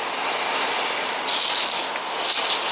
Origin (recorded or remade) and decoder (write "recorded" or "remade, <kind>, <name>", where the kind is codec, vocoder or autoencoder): recorded